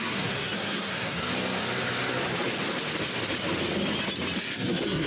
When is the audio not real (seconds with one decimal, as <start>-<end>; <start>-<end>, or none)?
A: 0.0-1.3; 4.4-5.1